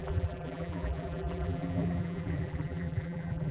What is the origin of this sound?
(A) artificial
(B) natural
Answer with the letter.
A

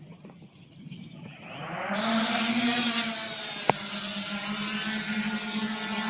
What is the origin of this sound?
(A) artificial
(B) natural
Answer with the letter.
B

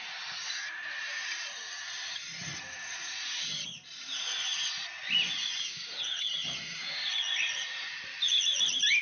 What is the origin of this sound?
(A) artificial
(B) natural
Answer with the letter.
B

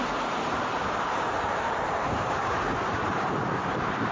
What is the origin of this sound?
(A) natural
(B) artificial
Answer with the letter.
B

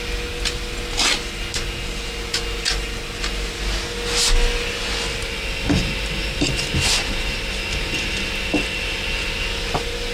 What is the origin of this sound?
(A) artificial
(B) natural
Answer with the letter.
B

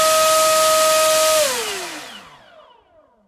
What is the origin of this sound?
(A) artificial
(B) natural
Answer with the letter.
B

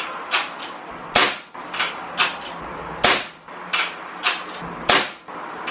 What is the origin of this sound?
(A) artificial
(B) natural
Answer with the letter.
B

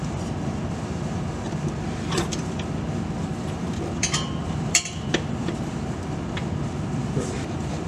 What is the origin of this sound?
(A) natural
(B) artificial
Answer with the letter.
B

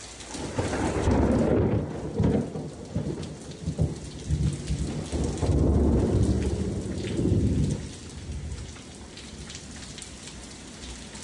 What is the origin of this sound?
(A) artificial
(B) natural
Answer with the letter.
B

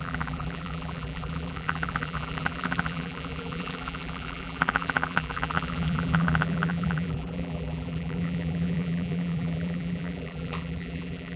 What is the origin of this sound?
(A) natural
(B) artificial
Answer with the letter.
B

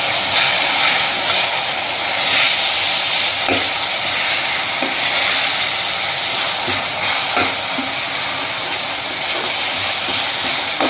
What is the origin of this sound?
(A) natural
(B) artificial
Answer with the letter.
A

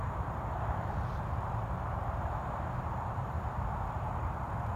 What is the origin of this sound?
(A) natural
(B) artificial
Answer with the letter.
B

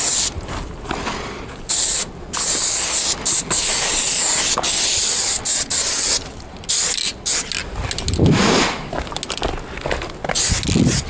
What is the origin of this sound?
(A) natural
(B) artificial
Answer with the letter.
A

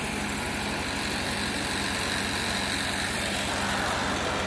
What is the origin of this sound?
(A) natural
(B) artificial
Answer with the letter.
A